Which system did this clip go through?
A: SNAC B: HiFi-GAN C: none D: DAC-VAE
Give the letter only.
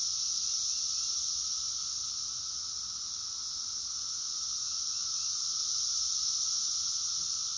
C